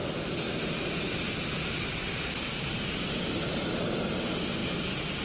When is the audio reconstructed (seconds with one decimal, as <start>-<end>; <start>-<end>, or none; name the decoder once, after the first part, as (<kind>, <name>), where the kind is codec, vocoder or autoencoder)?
none